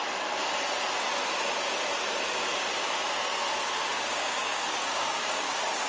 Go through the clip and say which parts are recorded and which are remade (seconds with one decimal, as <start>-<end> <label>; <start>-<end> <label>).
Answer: 0.0-3.9 recorded; 3.9-5.9 remade